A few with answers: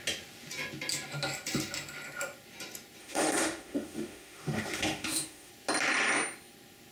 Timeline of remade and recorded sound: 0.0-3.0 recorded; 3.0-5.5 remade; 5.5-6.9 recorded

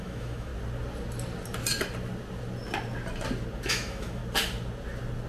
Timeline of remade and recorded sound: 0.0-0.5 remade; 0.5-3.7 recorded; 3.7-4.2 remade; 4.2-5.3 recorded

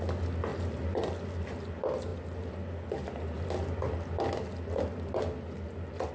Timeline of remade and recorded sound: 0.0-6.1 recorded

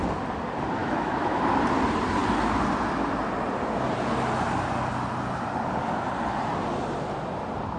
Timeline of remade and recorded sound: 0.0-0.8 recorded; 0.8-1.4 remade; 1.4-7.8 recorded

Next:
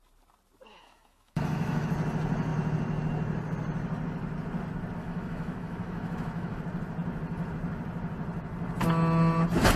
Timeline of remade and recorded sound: 0.0-0.7 recorded; 0.7-1.9 remade; 1.9-5.0 recorded; 5.0-6.6 remade; 6.6-9.8 recorded